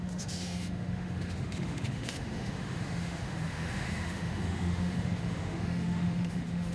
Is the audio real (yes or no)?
no